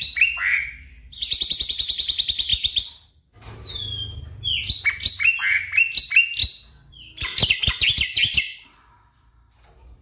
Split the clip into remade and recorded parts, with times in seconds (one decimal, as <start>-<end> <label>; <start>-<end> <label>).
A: 0.0-2.5 recorded; 2.5-4.2 remade; 4.2-6.4 recorded; 6.4-7.5 remade; 7.5-10.0 recorded

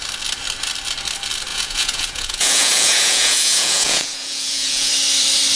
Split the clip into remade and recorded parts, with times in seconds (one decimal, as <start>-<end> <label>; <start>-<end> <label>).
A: 0.0-1.5 recorded; 1.5-4.9 remade; 4.9-5.6 recorded

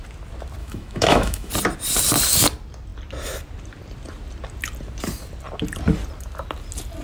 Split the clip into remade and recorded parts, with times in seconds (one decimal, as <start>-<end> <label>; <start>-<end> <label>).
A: 0.0-0.6 recorded; 0.6-1.5 remade; 1.5-7.0 recorded